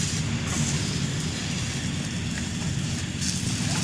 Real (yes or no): yes